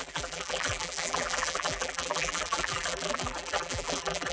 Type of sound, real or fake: fake